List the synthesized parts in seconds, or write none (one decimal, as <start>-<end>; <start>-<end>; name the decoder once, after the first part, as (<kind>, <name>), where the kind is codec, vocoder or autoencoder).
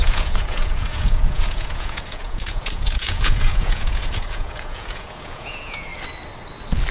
0.0-5.9 (vocoder, Vocos)